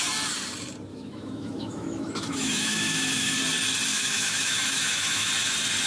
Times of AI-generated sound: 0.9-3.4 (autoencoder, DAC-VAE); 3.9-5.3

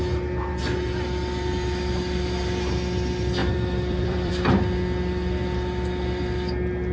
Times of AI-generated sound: 3.4-4.3 (vocoder, BigVGAN v2)

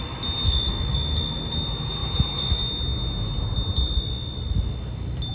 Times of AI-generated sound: none

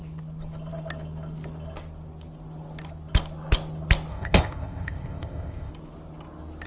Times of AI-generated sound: 4.1-5.7 (codec, ZipCodec)